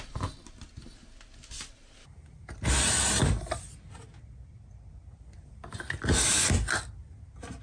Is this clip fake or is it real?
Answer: real